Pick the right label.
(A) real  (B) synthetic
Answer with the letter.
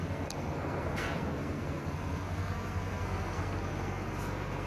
B